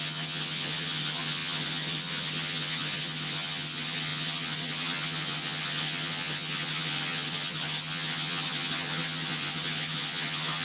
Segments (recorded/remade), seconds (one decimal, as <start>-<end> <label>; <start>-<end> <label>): 0.0-10.6 remade

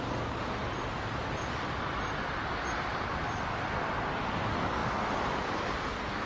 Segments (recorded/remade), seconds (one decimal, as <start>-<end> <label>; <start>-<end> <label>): 0.0-0.6 recorded; 0.6-4.1 remade; 4.1-4.8 recorded; 4.8-5.7 remade; 5.7-6.3 recorded

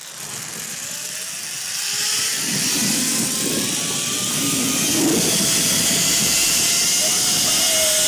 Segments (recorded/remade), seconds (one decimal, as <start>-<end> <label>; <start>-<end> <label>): 0.0-8.1 recorded

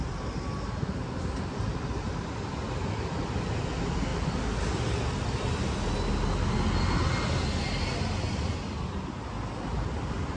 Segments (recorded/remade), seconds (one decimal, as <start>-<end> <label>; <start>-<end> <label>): 0.0-10.4 recorded

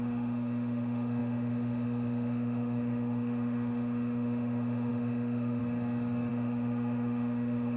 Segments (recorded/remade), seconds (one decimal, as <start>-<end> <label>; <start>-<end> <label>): 0.0-5.6 remade; 5.6-6.3 recorded; 6.3-7.8 remade